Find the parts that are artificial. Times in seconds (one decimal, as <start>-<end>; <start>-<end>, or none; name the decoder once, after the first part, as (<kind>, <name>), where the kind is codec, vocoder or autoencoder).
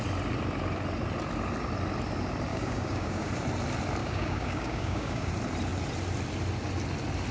2.5-3.3 (codec, DAC); 4.0-5.3